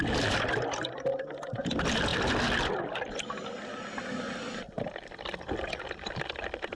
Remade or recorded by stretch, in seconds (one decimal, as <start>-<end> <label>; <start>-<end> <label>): 0.0-6.7 recorded